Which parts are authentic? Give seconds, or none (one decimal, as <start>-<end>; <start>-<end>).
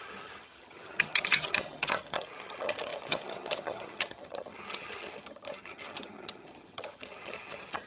none